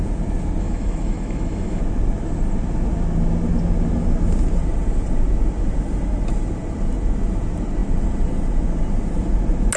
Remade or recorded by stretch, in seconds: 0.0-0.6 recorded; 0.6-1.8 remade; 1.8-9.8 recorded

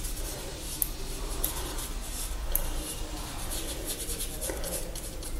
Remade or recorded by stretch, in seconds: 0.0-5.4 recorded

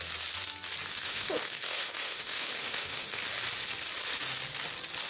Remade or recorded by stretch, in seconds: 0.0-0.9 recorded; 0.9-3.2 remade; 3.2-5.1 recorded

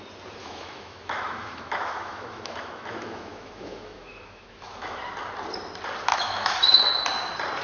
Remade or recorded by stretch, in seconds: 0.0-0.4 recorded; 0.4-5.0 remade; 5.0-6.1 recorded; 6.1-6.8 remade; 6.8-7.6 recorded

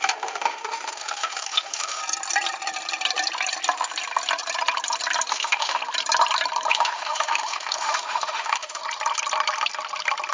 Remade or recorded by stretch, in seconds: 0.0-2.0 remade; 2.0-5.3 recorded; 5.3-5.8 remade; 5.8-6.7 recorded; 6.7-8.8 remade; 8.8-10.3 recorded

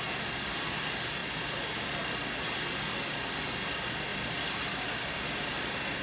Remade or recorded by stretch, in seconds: 0.0-6.0 recorded